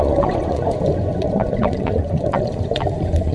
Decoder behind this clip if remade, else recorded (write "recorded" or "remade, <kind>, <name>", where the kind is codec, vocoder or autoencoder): remade, vocoder, Vocos